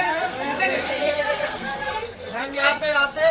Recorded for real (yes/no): no